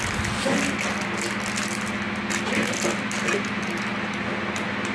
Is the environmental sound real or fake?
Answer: real